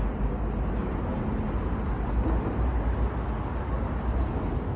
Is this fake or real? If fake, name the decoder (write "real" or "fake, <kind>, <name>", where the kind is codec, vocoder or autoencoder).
real